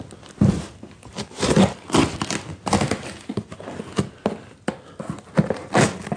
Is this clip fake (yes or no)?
no